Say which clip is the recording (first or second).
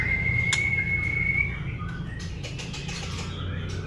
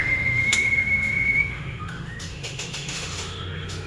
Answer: first